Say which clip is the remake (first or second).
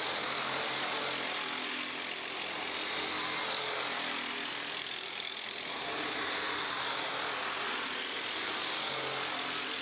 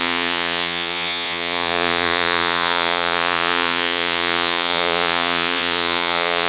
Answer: second